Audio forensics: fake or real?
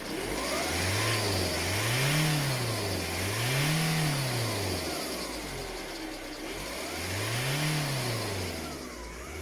real